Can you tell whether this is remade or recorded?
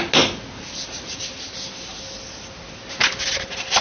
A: recorded